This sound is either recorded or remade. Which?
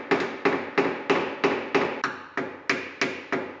recorded